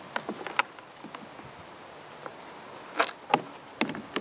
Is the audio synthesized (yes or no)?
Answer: no